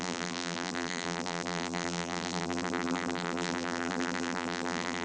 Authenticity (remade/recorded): remade